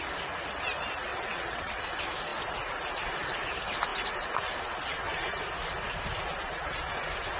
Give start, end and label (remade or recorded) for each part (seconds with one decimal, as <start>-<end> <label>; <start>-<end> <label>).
0.0-1.1 recorded; 1.1-1.8 remade; 1.8-7.4 recorded